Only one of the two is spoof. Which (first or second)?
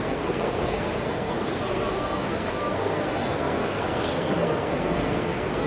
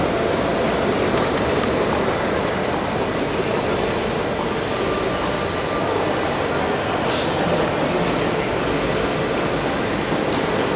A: first